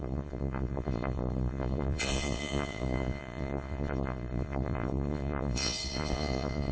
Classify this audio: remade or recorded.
remade